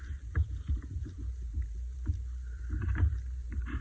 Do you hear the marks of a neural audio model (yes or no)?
yes